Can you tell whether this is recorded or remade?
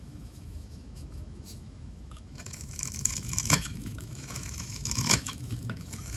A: remade